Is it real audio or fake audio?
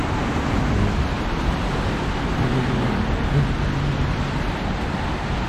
real